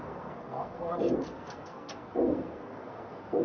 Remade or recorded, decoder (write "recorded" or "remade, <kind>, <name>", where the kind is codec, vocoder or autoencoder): remade, codec, SNAC